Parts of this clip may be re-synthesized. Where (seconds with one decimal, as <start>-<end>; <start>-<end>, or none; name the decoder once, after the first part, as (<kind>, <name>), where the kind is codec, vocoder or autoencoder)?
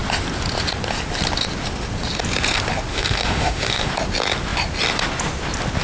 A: 2.9-3.9 (autoencoder, DAC-VAE)